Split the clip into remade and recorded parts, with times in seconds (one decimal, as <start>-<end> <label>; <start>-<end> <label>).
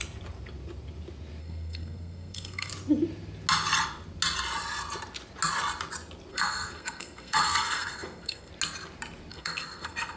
0.0-1.4 recorded; 1.4-2.7 remade; 2.7-6.3 recorded; 6.3-8.5 remade; 8.5-9.3 recorded; 9.3-10.2 remade